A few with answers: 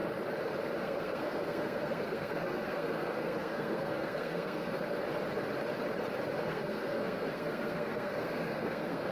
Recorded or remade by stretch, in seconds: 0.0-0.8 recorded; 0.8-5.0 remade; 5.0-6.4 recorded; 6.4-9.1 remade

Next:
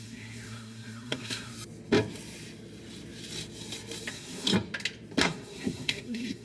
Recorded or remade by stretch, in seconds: 0.0-1.5 remade; 1.5-4.1 recorded; 4.1-4.5 remade; 4.5-5.2 recorded; 5.2-6.4 remade

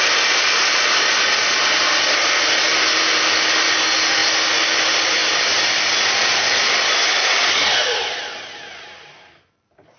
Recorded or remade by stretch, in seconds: 0.0-10.0 recorded

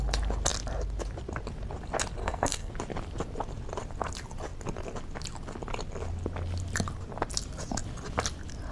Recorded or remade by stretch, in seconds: 0.0-2.2 recorded; 2.2-2.7 remade; 2.7-8.7 recorded

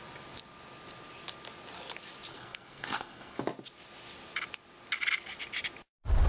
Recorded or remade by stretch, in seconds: 0.0-2.3 recorded; 2.3-3.4 remade; 3.4-6.3 recorded

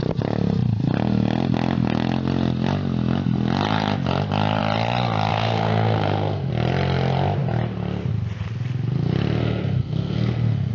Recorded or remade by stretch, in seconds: 0.0-5.3 recorded; 5.3-6.5 remade; 6.5-9.4 recorded; 9.4-10.7 remade

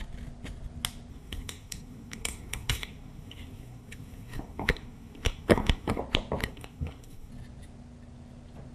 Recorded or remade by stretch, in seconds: 0.0-1.1 recorded; 1.1-6.0 remade; 6.0-6.4 recorded; 6.4-7.3 remade; 7.3-8.7 recorded